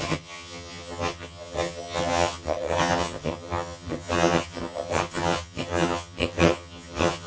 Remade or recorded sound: remade